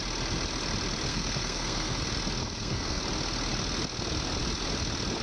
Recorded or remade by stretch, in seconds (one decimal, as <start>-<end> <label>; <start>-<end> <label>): 0.0-1.1 recorded; 1.1-2.0 remade; 2.0-2.4 recorded; 2.4-3.0 remade; 3.0-5.2 recorded

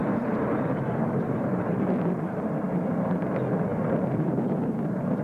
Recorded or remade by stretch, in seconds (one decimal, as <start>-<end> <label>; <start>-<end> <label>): 0.0-3.1 remade; 3.1-3.7 recorded; 3.7-5.2 remade